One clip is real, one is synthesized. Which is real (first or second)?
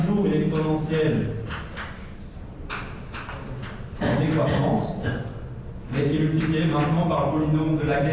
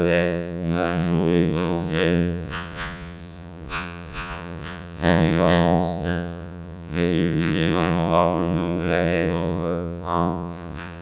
first